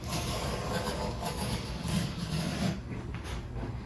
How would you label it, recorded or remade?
remade